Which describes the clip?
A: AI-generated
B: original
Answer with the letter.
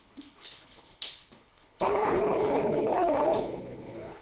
A